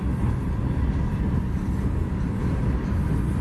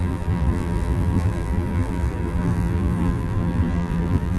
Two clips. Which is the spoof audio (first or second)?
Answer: second